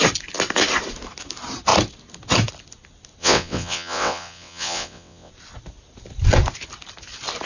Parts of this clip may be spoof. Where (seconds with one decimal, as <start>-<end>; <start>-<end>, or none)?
3.2-5.3